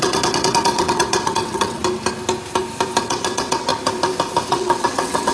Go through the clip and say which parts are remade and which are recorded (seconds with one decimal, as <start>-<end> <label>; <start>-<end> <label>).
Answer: 0.0-1.8 remade; 1.8-3.0 recorded; 3.0-3.7 remade; 3.7-4.5 recorded; 4.5-5.3 remade